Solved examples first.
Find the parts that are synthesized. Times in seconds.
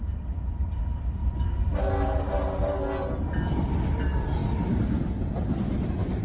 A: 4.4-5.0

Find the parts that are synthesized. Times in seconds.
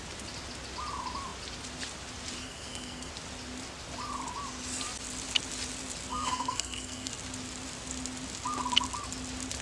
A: 2.4-3.1; 6.1-7.1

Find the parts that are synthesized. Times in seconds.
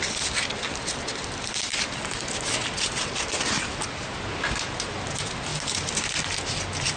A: none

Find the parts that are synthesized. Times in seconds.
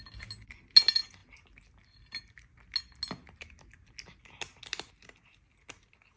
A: none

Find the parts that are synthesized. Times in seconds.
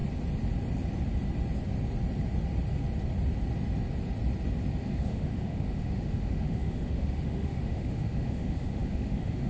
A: 4.8-9.5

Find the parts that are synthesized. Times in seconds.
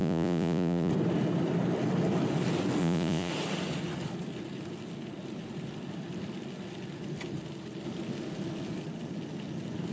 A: 0.0-0.9; 2.8-3.3